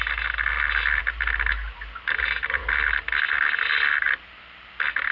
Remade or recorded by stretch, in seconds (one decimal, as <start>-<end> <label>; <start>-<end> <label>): 0.0-5.1 recorded